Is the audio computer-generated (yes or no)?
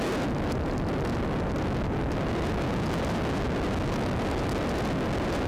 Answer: no